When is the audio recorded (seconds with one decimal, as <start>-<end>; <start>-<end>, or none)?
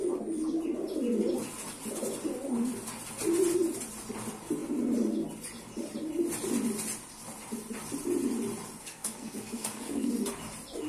0.0-8.8; 10.1-10.9